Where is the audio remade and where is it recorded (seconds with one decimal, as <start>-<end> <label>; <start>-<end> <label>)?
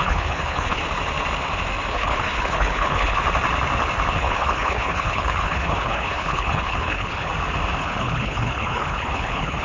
0.0-0.8 remade; 0.8-1.9 recorded; 1.9-3.2 remade; 3.2-4.1 recorded; 4.1-7.3 remade; 7.3-7.8 recorded; 7.8-9.6 remade